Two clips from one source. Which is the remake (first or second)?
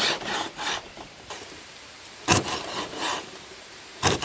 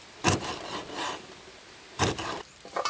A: first